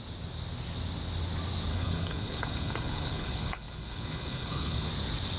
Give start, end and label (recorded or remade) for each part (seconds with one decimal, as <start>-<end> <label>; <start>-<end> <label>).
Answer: 0.0-1.7 recorded; 1.7-4.9 remade; 4.9-5.4 recorded